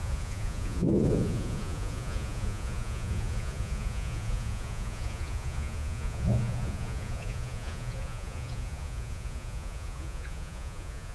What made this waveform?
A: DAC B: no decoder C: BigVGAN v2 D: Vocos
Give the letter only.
D